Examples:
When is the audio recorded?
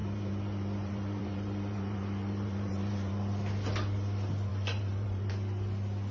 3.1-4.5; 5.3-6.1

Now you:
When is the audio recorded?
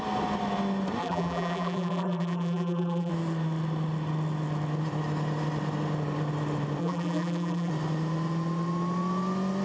0.0-1.0; 3.1-6.8; 7.7-9.6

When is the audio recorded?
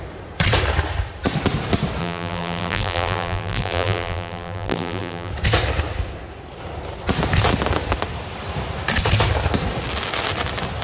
0.0-2.0; 5.3-10.8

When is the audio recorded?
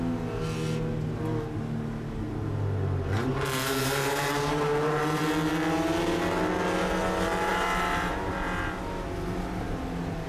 0.0-3.3; 5.2-7.5; 8.3-10.3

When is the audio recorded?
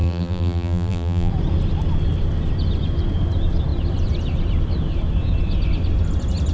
1.3-6.5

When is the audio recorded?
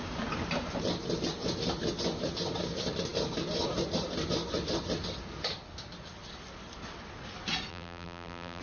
0.0-7.7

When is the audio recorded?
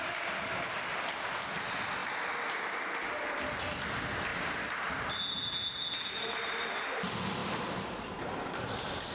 0.0-2.0; 3.6-4.3; 5.2-9.1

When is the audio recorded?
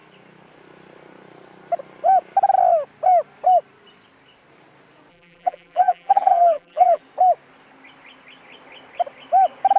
0.0-5.1; 7.0-9.8